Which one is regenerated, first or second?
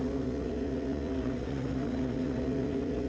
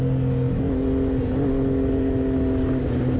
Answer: first